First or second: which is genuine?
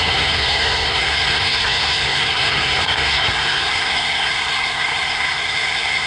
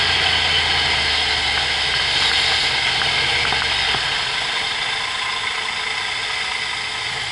second